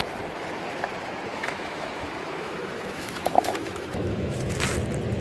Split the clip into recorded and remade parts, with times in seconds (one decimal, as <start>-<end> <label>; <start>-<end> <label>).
0.0-1.3 recorded; 1.3-4.4 remade; 4.4-5.2 recorded